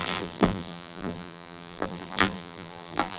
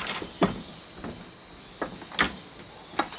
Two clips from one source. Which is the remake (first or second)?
first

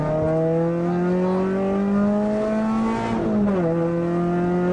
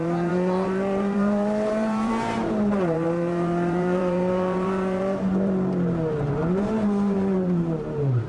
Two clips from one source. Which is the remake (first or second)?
second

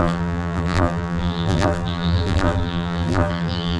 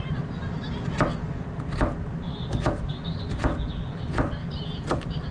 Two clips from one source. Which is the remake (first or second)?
first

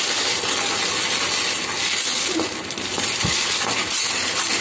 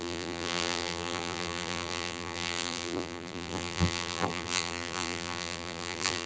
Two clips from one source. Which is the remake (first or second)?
second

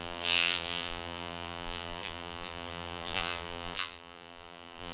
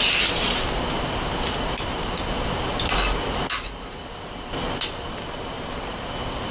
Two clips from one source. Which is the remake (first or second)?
first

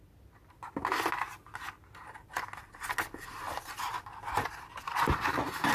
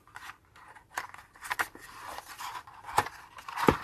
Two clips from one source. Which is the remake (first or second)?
second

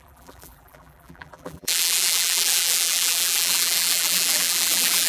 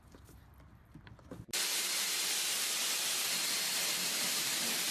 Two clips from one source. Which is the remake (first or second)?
first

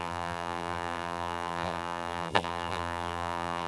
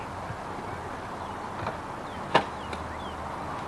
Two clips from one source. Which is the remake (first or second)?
first